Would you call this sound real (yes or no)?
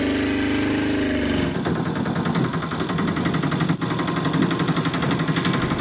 yes